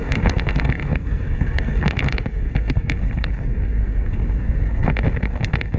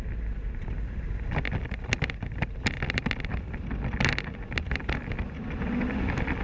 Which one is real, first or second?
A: second